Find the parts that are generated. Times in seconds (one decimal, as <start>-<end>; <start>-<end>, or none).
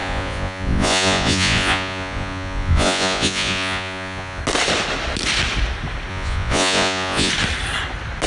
0.0-4.4; 6.1-7.3